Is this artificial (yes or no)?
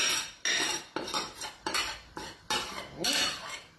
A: no